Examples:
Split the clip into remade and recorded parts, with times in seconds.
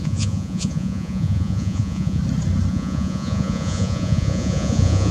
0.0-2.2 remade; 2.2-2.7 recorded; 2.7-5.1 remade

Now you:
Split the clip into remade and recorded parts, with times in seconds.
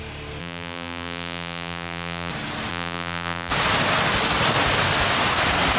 0.0-0.4 recorded; 0.4-2.3 remade; 2.3-2.7 recorded; 2.7-3.5 remade; 3.5-5.8 recorded